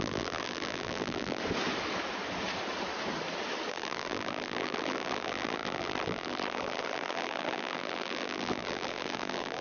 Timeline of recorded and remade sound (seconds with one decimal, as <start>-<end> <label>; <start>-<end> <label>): 0.0-1.4 remade; 1.4-3.7 recorded; 3.7-9.6 remade